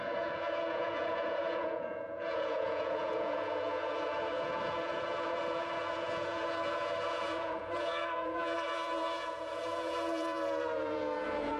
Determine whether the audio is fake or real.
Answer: fake